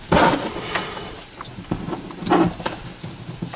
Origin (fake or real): real